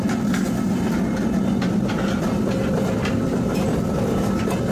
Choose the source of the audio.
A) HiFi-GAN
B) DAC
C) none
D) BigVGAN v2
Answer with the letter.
C